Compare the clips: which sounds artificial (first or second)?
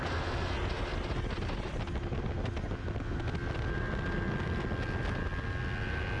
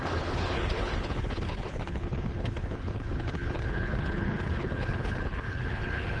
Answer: second